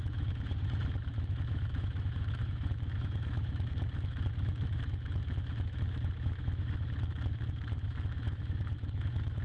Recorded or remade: remade